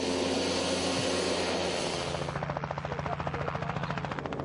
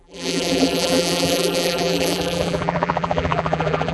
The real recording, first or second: first